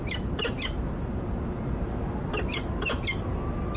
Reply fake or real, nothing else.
real